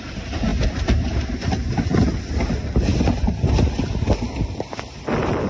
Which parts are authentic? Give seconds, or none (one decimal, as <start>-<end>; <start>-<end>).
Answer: 0.0-5.5

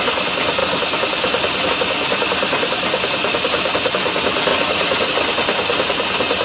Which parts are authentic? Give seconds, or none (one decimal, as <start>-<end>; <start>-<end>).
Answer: 0.0-4.5; 5.1-6.4

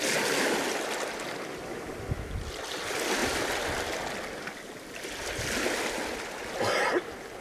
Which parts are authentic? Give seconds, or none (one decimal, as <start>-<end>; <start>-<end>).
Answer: 0.0-7.4